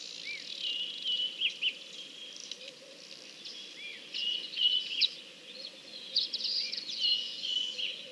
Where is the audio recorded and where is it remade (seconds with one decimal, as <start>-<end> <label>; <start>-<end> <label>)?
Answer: 0.0-3.9 recorded; 3.9-8.1 remade